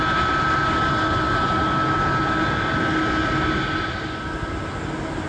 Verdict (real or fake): real